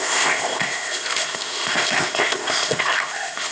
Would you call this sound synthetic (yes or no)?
yes